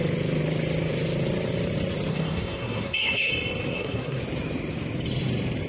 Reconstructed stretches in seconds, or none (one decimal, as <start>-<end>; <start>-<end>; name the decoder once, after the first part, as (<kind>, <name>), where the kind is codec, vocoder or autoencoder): 2.1-3.3 (codec, SNAC); 3.7-4.2